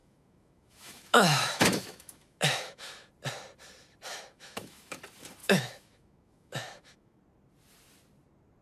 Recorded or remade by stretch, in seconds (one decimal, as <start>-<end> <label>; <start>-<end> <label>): 0.0-3.1 remade; 3.1-4.1 recorded; 4.1-5.0 remade; 5.0-5.4 recorded; 5.4-7.2 remade; 7.2-8.6 recorded